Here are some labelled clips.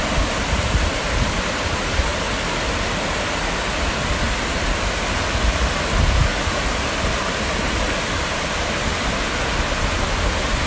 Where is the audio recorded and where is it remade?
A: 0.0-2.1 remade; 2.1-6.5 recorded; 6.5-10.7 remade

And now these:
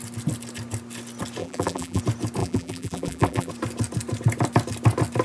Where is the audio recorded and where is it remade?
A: 0.0-1.4 recorded; 1.4-2.0 remade; 2.0-2.4 recorded; 2.4-3.5 remade; 3.5-5.2 recorded